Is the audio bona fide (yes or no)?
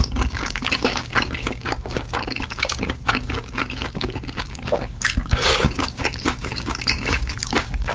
no